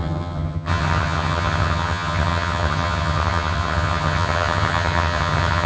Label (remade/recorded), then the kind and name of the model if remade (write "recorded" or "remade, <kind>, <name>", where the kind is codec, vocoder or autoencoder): remade, vocoder, HiFi-GAN